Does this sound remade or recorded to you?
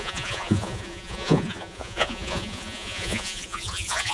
remade